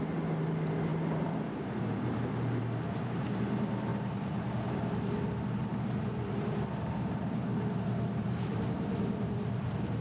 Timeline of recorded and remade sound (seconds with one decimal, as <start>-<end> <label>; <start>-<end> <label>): 0.0-10.0 remade